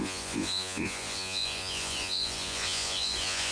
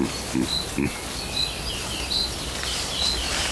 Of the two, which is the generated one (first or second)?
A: first